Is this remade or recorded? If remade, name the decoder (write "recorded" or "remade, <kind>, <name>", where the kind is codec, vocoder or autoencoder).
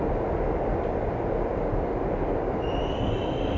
recorded